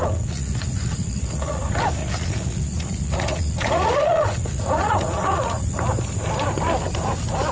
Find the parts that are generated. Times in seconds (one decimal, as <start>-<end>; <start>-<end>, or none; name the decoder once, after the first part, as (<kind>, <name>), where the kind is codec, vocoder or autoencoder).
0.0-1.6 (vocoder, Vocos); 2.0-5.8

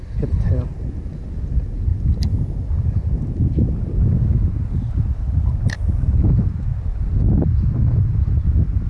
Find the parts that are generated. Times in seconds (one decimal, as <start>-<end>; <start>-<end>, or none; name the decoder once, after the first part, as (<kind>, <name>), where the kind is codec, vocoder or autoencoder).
none

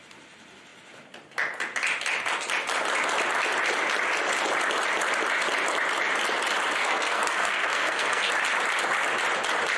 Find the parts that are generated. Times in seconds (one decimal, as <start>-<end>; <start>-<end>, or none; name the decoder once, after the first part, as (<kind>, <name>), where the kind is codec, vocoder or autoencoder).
6.8-8.3 (codec, SNAC)